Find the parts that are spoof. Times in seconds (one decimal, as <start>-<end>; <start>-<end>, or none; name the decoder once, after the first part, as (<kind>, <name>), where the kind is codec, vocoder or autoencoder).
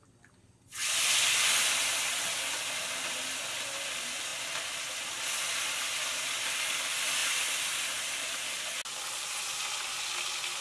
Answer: none